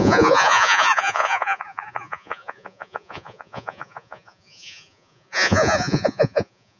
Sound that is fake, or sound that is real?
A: fake